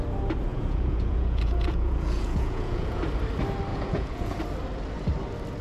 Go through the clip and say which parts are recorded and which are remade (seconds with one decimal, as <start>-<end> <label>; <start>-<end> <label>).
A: 0.0-0.5 recorded; 0.5-3.0 remade; 3.0-3.7 recorded; 3.7-4.4 remade; 4.4-5.6 recorded